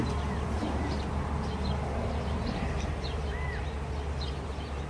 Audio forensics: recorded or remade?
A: recorded